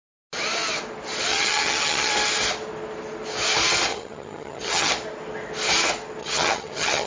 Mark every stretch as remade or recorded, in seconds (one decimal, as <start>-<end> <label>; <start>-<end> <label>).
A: 0.0-1.3 recorded; 1.3-2.1 remade; 2.1-3.9 recorded; 3.9-4.9 remade; 4.9-6.2 recorded; 6.2-7.1 remade

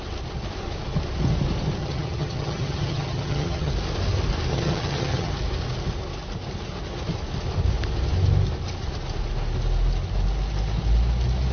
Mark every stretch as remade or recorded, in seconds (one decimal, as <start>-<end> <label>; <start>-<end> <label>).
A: 0.0-1.8 recorded; 1.8-3.7 remade; 3.7-4.5 recorded; 4.5-5.3 remade; 5.3-11.5 recorded

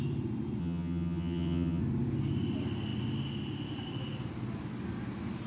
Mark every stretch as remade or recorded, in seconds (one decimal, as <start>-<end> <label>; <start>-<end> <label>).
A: 0.0-0.6 recorded; 0.6-1.8 remade; 1.8-5.5 recorded

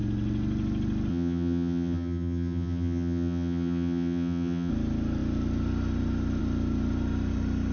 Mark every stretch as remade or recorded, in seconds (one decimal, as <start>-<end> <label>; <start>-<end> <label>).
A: 0.0-1.1 recorded; 1.1-4.7 remade; 4.7-7.7 recorded

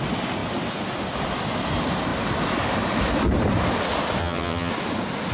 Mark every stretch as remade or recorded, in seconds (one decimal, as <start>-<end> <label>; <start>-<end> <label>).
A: 0.0-4.2 recorded; 4.2-4.7 remade; 4.7-5.3 recorded